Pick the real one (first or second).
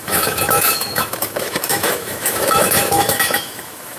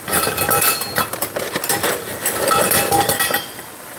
second